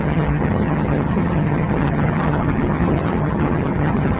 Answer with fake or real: fake